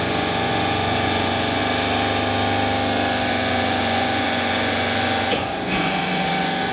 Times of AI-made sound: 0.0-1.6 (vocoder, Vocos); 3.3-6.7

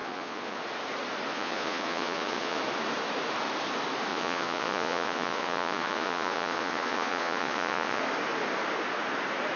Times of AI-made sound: 0.0-0.6 (vocoder, Vocos); 1.3-2.6; 4.1-8.0

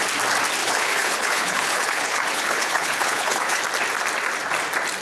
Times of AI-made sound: 0.6-3.6 (codec, HILCodec)